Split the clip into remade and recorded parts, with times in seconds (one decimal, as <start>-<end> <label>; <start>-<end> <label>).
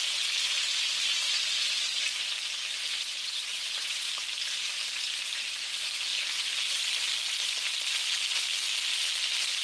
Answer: 0.0-3.2 recorded; 3.2-4.1 remade; 4.1-9.6 recorded